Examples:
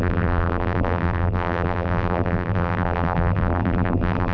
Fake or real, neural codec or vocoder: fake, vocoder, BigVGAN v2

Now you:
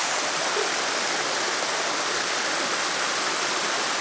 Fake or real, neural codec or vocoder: real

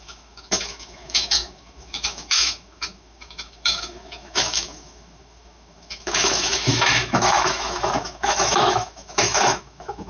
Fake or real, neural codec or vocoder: fake, autoencoder, DAC-VAE